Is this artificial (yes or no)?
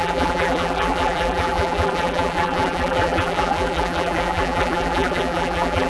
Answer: yes